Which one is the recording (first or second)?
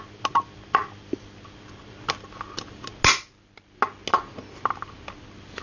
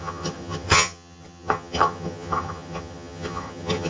first